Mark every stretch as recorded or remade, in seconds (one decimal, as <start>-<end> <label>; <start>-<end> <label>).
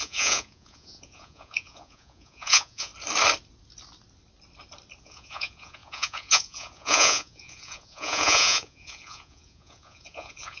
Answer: 0.0-2.9 remade; 2.9-5.0 recorded; 5.0-10.6 remade